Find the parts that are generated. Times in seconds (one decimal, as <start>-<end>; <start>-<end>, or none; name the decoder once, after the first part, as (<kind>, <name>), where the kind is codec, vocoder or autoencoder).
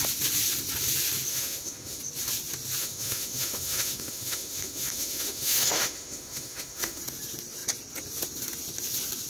1.3-2.0 (autoencoder, DAC-VAE); 2.8-7.0